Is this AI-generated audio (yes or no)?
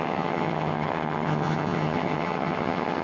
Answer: yes